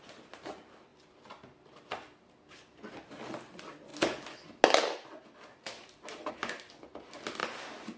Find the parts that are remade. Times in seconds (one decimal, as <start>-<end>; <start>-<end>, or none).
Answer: none